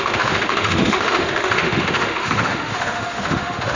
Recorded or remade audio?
remade